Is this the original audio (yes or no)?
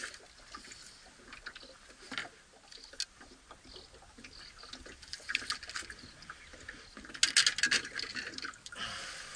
yes